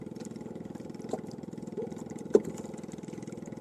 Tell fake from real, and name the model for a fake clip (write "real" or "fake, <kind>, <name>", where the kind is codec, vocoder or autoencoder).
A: real